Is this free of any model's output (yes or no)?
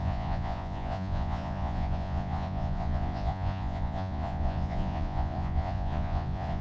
no